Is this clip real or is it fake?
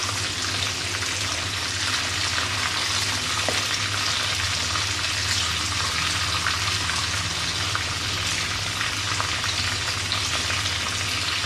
real